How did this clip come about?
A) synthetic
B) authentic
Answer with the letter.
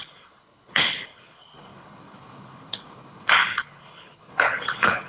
A